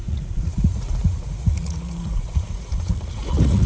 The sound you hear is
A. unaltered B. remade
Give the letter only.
B